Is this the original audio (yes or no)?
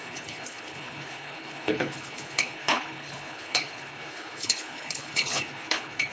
no